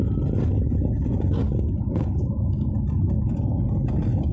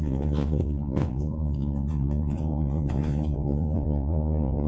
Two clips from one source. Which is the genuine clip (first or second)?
first